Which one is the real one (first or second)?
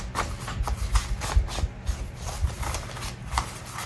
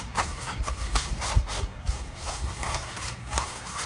first